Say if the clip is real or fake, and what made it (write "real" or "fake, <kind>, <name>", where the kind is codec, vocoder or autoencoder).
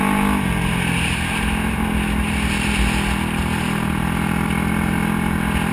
real